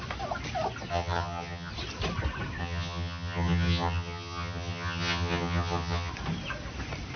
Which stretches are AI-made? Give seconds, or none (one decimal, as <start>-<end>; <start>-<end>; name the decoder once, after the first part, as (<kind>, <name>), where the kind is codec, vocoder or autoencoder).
0.9-1.7 (vocoder, HiFi-GAN); 2.6-6.1